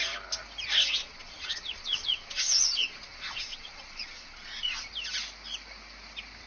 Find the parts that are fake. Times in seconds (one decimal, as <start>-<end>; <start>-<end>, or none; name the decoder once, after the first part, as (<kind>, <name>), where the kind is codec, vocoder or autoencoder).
1.0-4.9 (vocoder, Vocos)